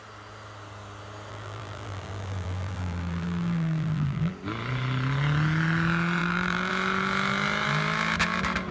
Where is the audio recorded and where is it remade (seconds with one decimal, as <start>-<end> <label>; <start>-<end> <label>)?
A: 0.0-1.3 recorded; 1.3-4.3 remade; 4.3-6.2 recorded; 6.2-6.7 remade; 6.7-8.7 recorded